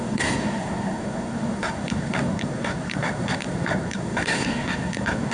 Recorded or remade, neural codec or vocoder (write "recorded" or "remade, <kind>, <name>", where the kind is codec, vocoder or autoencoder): remade, codec, SNAC